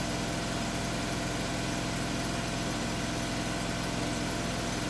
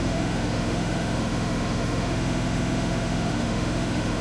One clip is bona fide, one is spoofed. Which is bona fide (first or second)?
first